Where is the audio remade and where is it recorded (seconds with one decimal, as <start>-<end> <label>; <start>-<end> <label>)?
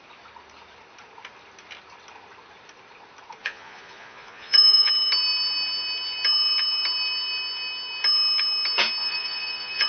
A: 0.0-3.4 recorded; 3.4-4.9 remade; 4.9-9.0 recorded; 9.0-9.9 remade